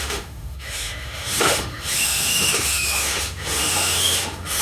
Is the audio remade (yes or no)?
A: yes